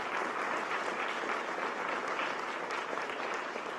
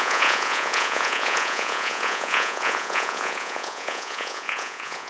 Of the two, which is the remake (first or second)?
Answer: second